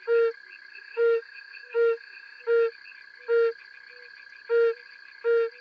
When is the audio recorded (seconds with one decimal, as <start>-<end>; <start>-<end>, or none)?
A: 0.0-0.7; 2.4-5.6